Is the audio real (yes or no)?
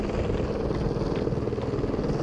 yes